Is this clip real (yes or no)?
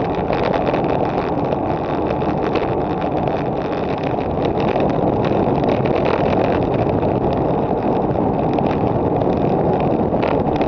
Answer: yes